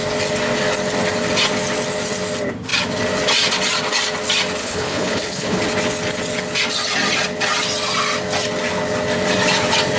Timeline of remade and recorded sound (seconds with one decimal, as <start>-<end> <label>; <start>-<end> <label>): 0.0-4.6 recorded; 4.6-5.6 remade; 5.6-10.0 recorded